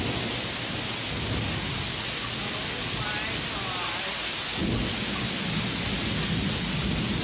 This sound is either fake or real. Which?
real